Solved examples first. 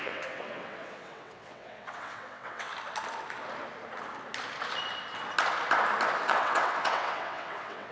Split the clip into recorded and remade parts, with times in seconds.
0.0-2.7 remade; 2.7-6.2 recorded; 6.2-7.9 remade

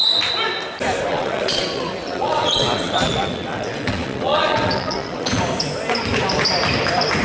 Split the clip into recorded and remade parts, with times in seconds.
0.0-1.1 recorded; 1.1-5.4 remade; 5.4-7.2 recorded

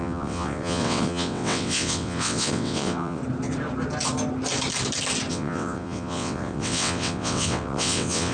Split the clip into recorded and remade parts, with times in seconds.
0.0-3.2 remade; 3.2-5.3 recorded; 5.3-8.3 remade

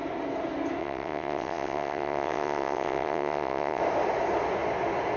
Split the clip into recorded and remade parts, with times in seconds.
0.0-0.8 recorded; 0.8-3.8 remade; 3.8-5.2 recorded

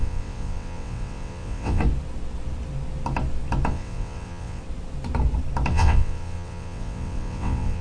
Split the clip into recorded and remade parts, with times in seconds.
0.0-1.8 remade; 1.8-3.7 recorded; 3.7-4.6 remade; 4.6-5.7 recorded; 5.7-7.8 remade

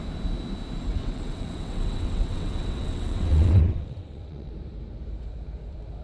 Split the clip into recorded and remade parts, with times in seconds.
0.0-0.9 recorded; 0.9-4.5 remade; 4.5-6.0 recorded

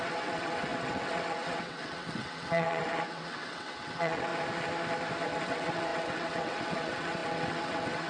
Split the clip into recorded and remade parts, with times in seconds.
0.0-4.3 remade; 4.3-5.4 recorded; 5.4-8.1 remade

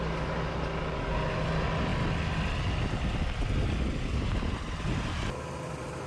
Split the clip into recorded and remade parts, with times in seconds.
0.0-6.1 recorded